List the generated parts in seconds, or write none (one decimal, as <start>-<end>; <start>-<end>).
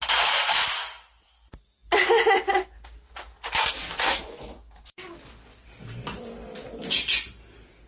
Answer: none